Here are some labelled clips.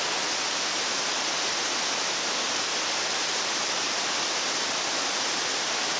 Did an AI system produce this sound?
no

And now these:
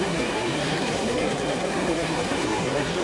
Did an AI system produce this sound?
yes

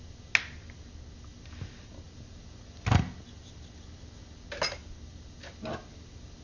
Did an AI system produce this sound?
no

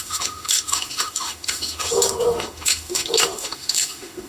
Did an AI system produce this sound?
yes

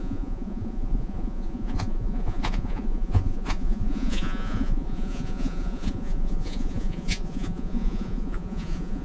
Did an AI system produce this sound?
yes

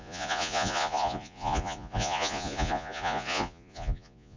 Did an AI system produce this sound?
yes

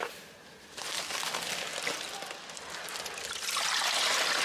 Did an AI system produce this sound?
no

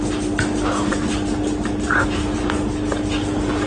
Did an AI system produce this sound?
no